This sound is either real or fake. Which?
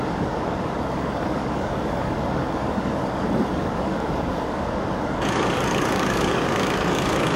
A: fake